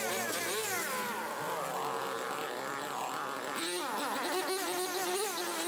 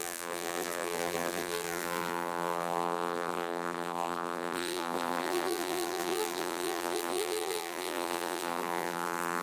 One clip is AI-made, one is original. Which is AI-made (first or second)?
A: second